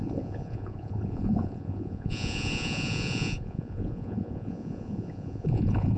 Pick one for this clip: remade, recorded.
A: remade